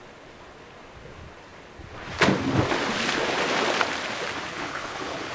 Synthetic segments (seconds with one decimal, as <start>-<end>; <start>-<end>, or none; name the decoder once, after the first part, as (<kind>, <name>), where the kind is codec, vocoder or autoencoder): 4.5-5.3 (codec, HILCodec)